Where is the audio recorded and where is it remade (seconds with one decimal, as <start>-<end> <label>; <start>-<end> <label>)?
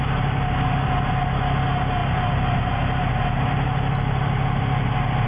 0.0-5.3 recorded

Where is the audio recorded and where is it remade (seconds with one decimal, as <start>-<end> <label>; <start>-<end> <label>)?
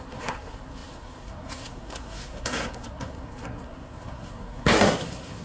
0.0-5.4 remade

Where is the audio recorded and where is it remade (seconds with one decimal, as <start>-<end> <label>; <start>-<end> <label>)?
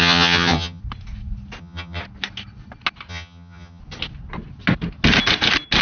0.0-0.8 remade; 0.8-1.6 recorded; 1.6-2.0 remade; 2.0-3.1 recorded; 3.1-3.8 remade; 3.8-5.8 recorded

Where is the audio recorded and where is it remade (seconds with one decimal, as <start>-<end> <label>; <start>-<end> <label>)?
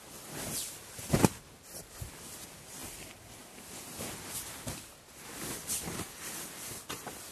0.0-7.3 recorded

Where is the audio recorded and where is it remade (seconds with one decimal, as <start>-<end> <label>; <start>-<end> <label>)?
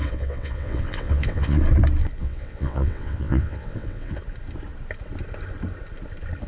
0.0-1.6 remade; 1.6-2.2 recorded; 2.2-4.2 remade; 4.2-6.5 recorded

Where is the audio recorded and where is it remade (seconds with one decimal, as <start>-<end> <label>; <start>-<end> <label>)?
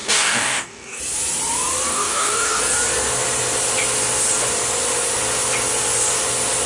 0.0-1.0 remade; 1.0-1.9 recorded; 1.9-2.6 remade; 2.6-6.7 recorded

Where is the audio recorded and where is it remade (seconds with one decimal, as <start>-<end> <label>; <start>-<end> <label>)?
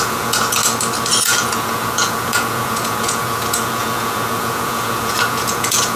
0.0-0.6 remade; 0.6-1.2 recorded; 1.2-6.0 remade